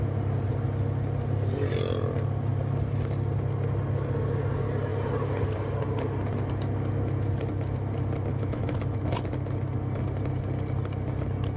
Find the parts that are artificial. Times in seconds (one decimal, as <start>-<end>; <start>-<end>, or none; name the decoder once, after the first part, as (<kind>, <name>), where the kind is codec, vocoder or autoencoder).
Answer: 8.3-8.8 (autoencoder, DAC-VAE)